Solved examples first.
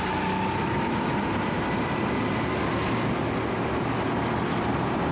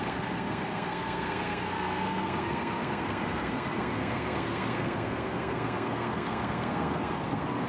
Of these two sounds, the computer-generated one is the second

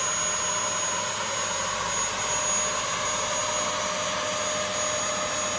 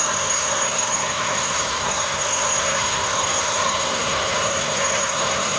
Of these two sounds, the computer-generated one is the second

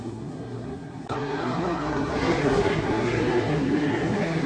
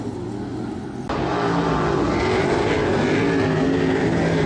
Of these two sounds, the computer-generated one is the first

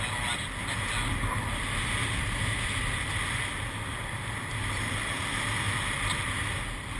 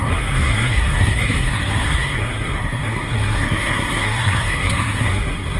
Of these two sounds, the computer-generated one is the second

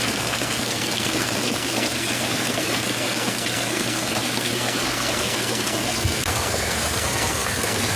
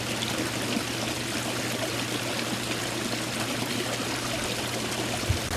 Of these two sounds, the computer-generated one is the first